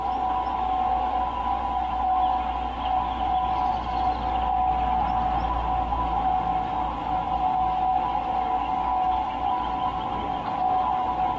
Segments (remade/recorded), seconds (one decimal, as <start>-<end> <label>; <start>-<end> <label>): 0.0-11.4 recorded